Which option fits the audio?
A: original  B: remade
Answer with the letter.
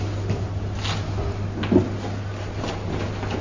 A